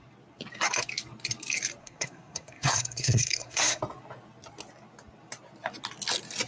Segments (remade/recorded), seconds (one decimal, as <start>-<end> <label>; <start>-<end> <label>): 0.0-1.8 recorded; 1.8-3.8 remade; 3.8-6.5 recorded